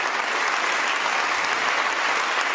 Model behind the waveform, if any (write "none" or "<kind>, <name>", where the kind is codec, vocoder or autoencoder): none